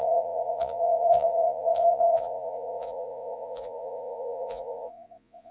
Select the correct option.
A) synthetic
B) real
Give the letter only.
A